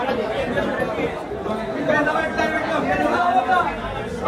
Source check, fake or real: real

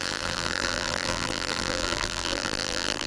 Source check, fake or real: fake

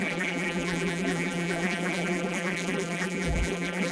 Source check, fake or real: fake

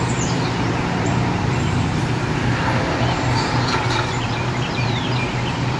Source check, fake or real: fake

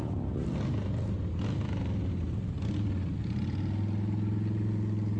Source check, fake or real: real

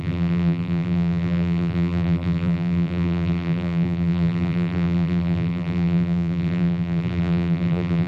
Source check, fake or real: fake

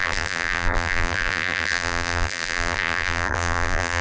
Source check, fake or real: fake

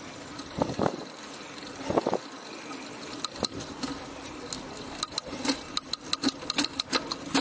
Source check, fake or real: real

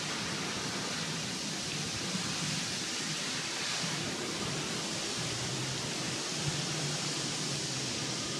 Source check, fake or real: fake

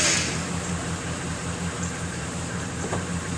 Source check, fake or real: fake